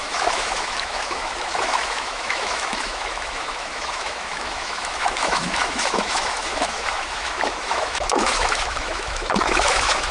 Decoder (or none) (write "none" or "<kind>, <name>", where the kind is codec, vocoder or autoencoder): autoencoder, DAC-VAE